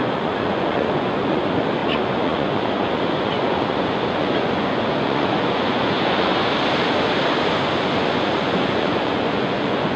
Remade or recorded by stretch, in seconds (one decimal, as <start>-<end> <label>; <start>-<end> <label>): 0.0-6.3 remade; 6.3-7.5 recorded; 7.5-10.0 remade